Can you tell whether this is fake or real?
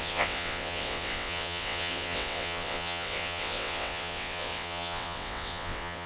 fake